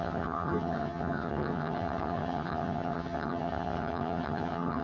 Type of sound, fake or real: fake